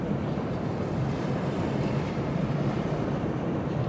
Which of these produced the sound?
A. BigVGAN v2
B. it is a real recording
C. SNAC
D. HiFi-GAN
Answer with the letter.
A